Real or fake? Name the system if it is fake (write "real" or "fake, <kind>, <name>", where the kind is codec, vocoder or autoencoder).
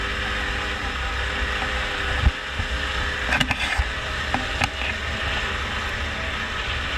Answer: real